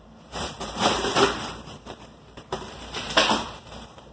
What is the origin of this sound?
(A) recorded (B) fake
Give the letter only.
B